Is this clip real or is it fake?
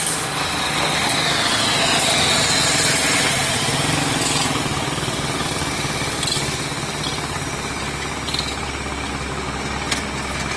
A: real